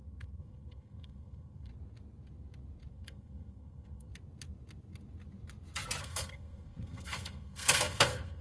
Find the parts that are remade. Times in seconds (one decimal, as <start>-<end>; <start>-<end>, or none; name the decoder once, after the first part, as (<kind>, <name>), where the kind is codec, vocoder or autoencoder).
0.0-1.7 (codec, SNAC); 2.9-4.1; 6.0-8.4